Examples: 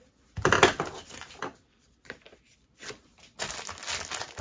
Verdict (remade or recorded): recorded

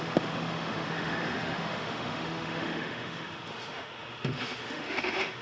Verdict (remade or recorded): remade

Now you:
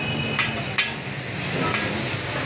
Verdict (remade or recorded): recorded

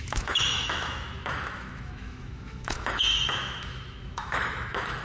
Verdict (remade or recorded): remade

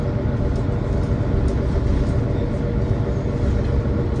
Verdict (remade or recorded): recorded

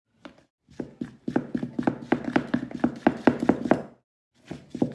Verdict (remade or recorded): recorded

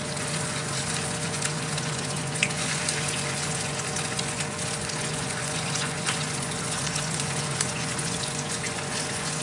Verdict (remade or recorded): remade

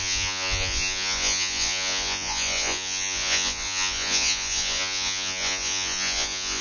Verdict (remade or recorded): remade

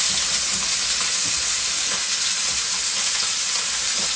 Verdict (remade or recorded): recorded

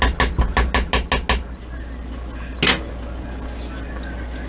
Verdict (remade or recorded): recorded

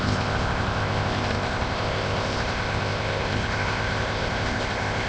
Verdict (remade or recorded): remade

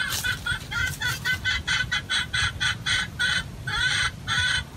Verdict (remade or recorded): recorded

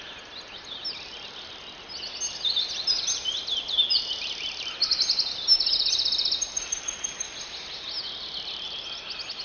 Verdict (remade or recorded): recorded